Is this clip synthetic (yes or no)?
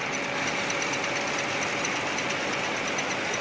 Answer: no